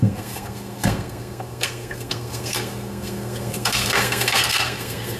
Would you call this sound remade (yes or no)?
yes